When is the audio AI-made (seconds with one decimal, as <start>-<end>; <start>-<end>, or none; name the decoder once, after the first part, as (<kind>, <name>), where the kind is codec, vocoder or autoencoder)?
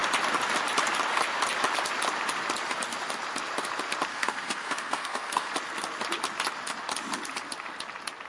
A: 4.1-5.5 (codec, SNAC)